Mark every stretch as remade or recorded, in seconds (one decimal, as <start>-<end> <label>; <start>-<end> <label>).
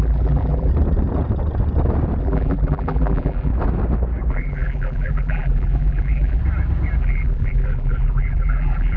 0.0-0.7 remade; 0.7-2.2 recorded; 2.2-3.5 remade; 3.5-4.3 recorded; 4.3-6.4 remade; 6.4-7.0 recorded; 7.0-9.0 remade